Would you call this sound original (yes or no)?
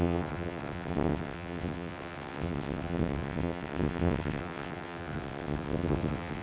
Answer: no